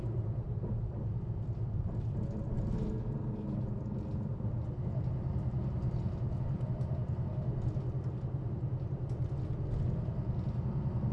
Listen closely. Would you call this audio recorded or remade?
recorded